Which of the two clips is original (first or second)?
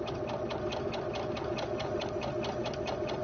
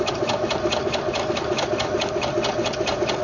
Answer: first